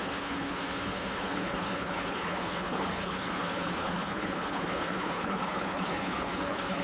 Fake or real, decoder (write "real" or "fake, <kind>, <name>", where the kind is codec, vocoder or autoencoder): fake, codec, HILCodec